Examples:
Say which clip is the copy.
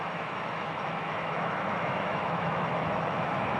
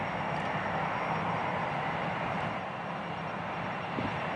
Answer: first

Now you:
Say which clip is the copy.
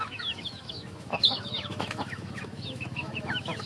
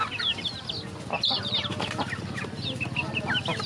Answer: first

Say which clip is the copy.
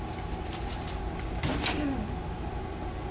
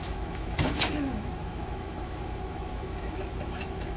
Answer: second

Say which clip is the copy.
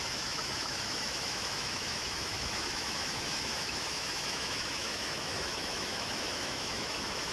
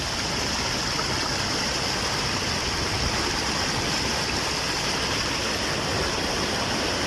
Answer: first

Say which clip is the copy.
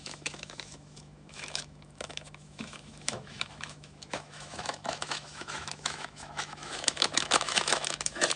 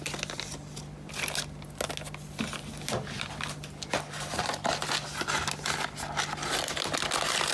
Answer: first